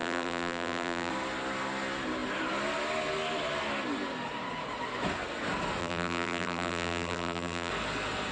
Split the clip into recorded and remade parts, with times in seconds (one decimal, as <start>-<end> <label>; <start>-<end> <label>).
0.0-1.1 remade; 1.1-5.8 recorded; 5.8-7.7 remade; 7.7-8.3 recorded

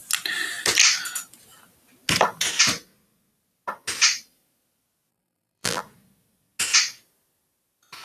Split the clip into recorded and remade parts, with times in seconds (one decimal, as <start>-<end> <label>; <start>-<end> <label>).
0.0-5.1 recorded; 5.1-5.8 remade; 5.8-8.0 recorded

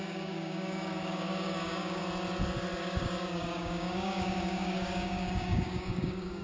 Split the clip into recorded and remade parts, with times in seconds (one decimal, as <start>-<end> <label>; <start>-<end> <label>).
0.0-2.0 remade; 2.0-2.8 recorded; 2.8-6.4 remade

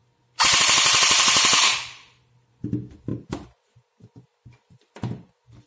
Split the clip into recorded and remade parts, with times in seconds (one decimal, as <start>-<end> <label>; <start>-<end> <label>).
0.0-5.7 recorded

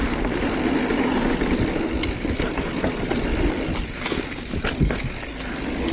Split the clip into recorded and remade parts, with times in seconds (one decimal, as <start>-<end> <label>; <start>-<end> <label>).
0.0-5.9 recorded

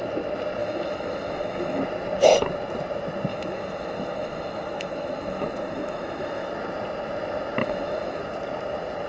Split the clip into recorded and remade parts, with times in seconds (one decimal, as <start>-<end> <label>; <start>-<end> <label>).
0.0-0.6 recorded; 0.6-1.8 remade; 1.8-3.3 recorded; 3.3-6.5 remade; 6.5-7.6 recorded; 7.6-8.2 remade; 8.2-9.1 recorded

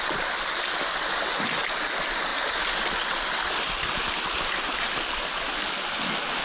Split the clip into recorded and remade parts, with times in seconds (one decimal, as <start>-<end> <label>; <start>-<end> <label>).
0.0-6.4 recorded

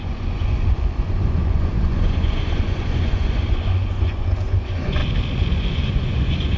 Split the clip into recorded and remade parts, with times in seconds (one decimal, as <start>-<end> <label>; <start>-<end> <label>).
0.0-5.0 remade; 5.0-5.5 recorded; 5.5-6.6 remade